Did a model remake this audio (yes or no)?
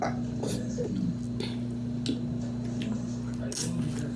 no